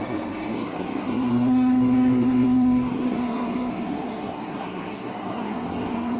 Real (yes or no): no